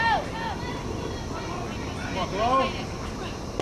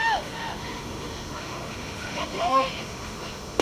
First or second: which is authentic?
first